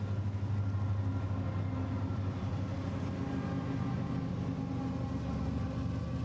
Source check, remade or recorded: recorded